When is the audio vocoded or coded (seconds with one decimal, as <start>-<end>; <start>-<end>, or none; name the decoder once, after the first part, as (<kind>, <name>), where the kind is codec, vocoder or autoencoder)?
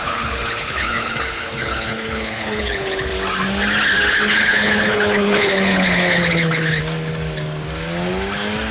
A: 0.0-3.1 (codec, HILCodec); 4.1-6.8